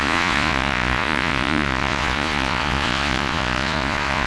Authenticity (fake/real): fake